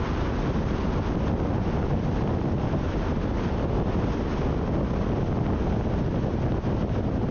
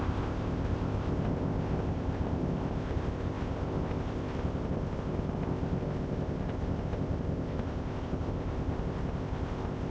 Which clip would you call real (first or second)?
first